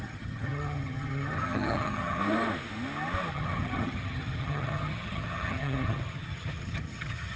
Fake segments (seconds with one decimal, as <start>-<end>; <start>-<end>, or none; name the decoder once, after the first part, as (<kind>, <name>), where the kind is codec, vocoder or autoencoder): 0.0-2.2 (vocoder, HiFi-GAN); 3.3-7.4